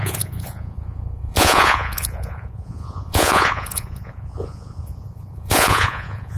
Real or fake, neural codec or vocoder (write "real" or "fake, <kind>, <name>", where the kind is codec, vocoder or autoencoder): fake, vocoder, Vocos